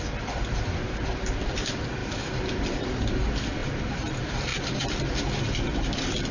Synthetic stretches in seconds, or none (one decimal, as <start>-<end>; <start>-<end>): 0.0-6.3